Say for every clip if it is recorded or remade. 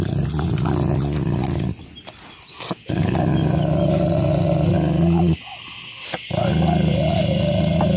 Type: recorded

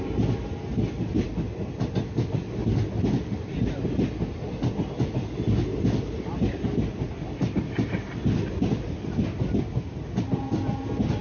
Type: recorded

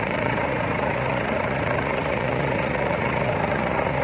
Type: remade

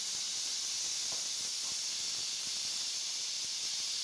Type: recorded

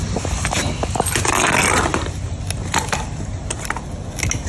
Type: recorded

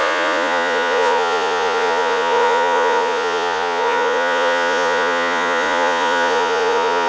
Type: remade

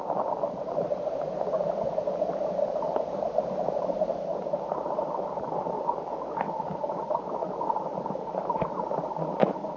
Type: recorded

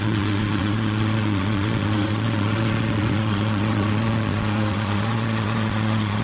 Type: remade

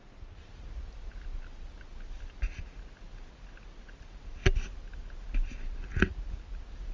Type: recorded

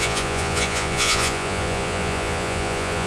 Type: remade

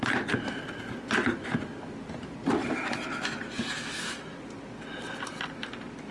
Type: recorded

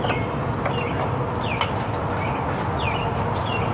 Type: recorded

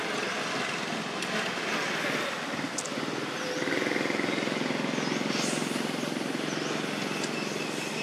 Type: recorded